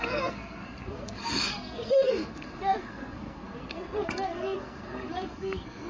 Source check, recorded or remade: remade